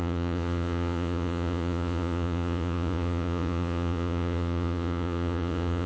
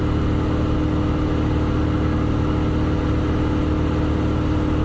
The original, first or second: second